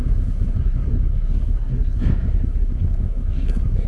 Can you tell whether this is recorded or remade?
remade